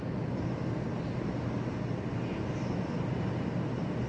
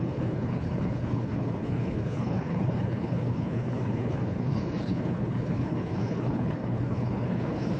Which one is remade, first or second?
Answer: second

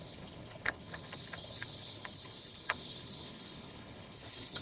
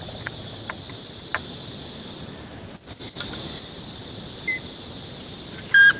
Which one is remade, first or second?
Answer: first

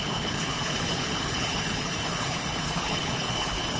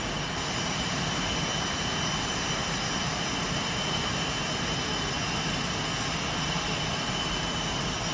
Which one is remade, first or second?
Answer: first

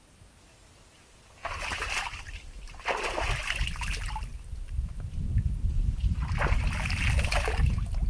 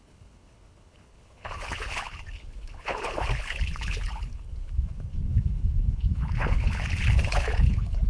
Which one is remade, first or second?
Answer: second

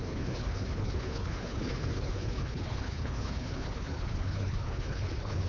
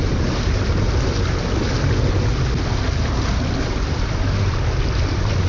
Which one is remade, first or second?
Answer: first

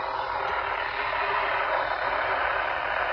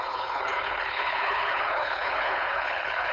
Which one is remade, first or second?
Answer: second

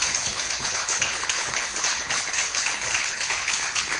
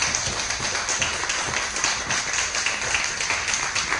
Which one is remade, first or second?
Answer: first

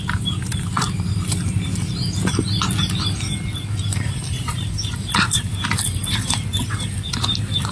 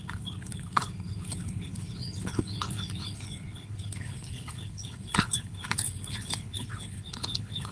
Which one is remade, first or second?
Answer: second